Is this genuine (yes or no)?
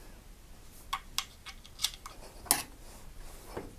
yes